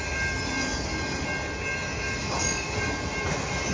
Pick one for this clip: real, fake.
real